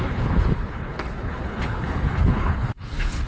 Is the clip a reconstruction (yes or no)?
yes